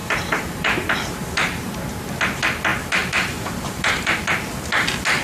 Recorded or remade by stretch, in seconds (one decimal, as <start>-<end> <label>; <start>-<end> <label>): 0.0-1.7 remade; 1.7-2.7 recorded; 2.7-4.2 remade; 4.2-5.2 recorded